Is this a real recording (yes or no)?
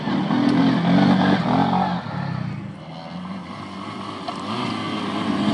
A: yes